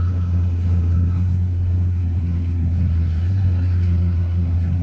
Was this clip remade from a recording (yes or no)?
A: yes